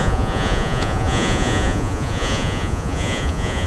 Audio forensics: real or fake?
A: fake